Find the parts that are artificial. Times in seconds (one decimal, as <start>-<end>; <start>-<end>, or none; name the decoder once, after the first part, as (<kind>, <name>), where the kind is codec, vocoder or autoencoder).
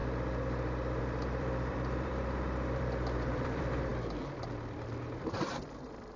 1.0-3.9 (vocoder, BigVGAN v2); 5.2-6.2